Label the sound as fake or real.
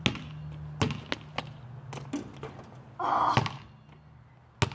real